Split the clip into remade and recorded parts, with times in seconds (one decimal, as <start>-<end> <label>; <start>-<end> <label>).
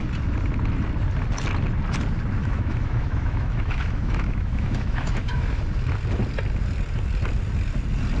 0.0-2.4 recorded; 2.4-5.6 remade; 5.6-8.2 recorded